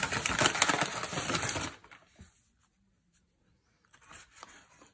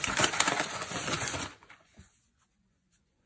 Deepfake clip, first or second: second